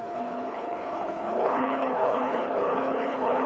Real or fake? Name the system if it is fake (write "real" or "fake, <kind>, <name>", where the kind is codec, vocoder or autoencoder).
fake, codec, HILCodec